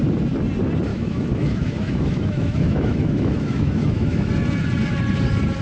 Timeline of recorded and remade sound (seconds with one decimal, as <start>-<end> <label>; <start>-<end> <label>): 0.0-0.9 recorded; 0.9-4.3 remade; 4.3-5.6 recorded